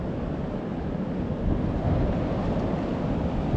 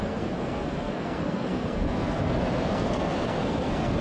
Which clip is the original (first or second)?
first